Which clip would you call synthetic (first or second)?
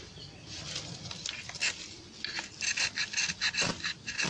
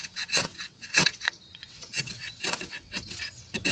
second